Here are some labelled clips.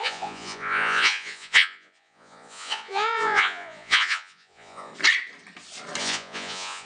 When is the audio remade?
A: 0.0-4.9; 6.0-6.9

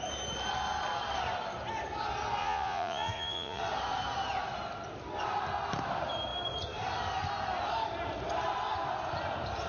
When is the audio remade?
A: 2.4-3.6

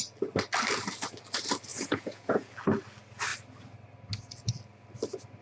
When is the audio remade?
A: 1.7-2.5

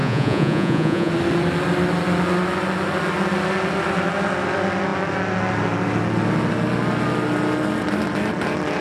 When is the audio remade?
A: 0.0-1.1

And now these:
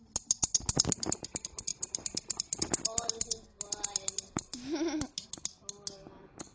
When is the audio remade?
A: none